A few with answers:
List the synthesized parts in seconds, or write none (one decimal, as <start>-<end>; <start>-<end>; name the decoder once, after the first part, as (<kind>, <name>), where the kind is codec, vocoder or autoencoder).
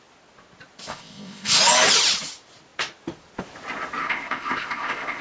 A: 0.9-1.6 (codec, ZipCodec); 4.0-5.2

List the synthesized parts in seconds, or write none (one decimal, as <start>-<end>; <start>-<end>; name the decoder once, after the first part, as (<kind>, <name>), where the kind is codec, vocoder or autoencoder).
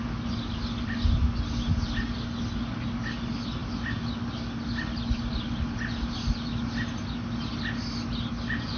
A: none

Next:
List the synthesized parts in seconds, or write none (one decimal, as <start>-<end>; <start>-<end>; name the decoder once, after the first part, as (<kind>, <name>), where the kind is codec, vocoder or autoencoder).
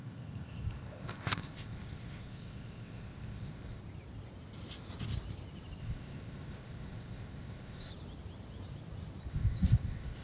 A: 0.0-3.8 (codec, ZipCodec); 5.8-7.9; 9.3-10.2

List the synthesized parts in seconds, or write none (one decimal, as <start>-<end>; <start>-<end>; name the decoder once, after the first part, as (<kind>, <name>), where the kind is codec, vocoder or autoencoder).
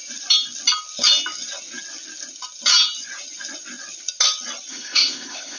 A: 4.7-5.6 (codec, ZipCodec)